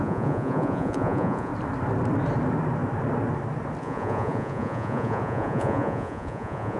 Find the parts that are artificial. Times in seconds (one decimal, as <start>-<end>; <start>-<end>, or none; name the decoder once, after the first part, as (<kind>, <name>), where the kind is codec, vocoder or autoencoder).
0.0-1.5 (vocoder, Vocos); 3.8-6.8